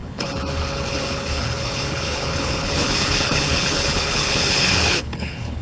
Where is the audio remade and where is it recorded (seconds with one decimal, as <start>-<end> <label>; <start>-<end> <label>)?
0.0-5.6 remade